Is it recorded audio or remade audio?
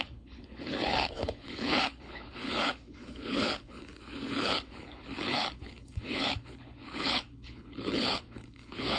remade